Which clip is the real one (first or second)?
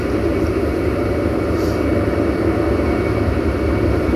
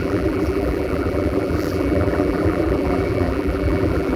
first